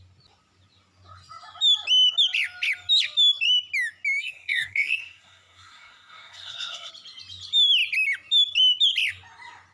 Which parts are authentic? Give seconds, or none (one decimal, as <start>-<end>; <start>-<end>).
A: 0.0-4.2; 6.9-9.7